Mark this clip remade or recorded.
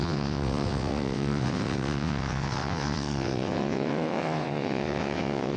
remade